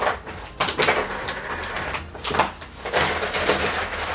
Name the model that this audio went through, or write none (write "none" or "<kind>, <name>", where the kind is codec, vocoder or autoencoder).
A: none